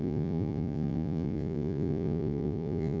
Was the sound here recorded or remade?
remade